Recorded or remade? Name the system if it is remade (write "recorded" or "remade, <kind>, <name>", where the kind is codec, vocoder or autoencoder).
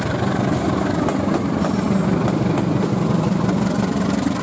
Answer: recorded